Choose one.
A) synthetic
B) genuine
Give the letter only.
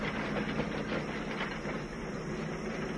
B